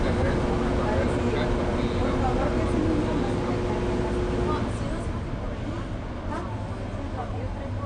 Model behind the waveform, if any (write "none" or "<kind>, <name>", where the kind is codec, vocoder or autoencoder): none